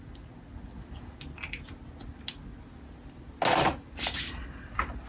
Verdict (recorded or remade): recorded